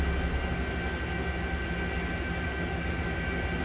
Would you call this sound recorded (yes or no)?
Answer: yes